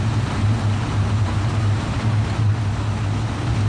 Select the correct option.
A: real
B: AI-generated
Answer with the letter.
A